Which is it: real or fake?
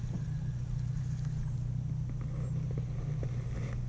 real